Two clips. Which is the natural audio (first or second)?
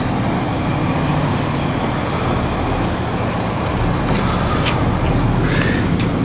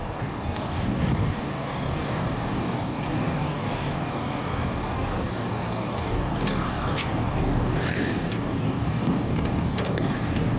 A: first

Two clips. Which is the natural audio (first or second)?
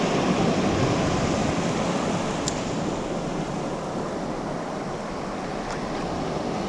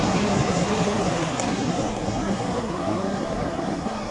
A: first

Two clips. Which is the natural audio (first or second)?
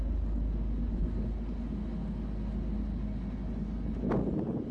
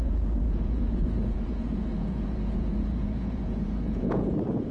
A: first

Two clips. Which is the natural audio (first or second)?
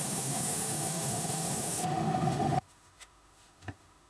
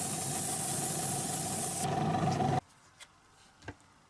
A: second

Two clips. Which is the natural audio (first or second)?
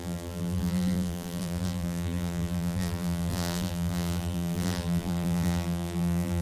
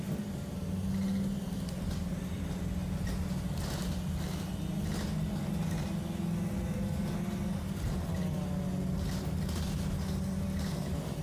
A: second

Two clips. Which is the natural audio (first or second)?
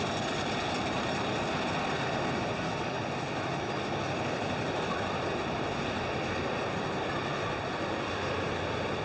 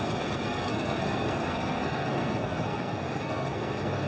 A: first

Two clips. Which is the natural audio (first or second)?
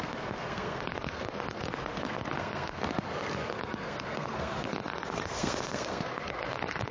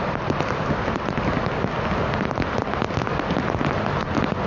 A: second